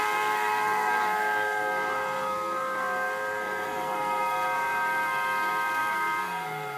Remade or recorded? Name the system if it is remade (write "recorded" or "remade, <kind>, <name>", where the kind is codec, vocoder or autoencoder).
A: remade, codec, SNAC